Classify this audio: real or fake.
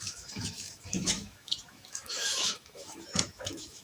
fake